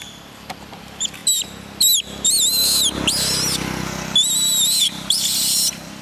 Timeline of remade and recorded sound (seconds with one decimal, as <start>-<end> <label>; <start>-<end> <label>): 0.0-1.2 remade; 1.2-4.8 recorded; 4.8-6.0 remade

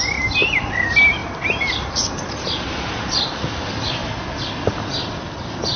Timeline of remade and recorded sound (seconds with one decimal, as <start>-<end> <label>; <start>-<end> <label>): 0.0-5.8 recorded

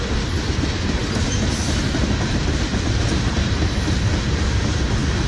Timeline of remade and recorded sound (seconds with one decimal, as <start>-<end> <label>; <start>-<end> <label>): 0.0-5.3 recorded

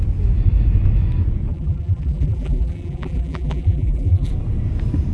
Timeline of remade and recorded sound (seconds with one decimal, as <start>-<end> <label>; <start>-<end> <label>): 0.0-1.5 recorded; 1.5-4.3 remade; 4.3-5.1 recorded

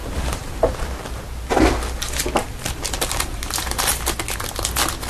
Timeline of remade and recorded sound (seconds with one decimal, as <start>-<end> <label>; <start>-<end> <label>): 0.0-1.1 remade; 1.1-2.4 recorded; 2.4-3.9 remade; 3.9-5.1 recorded

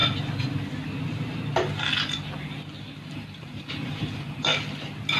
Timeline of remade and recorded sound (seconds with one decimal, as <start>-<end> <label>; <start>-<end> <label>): 0.0-3.1 recorded; 3.1-4.5 remade; 4.5-5.2 recorded

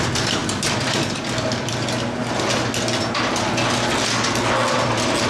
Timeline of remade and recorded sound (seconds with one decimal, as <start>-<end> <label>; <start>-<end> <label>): 0.0-0.4 recorded; 0.4-1.2 remade; 1.2-5.3 recorded

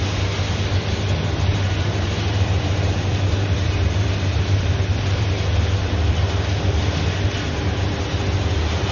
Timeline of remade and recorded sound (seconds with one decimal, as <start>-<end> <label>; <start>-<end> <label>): 0.0-1.5 recorded; 1.5-5.3 remade; 5.3-8.9 recorded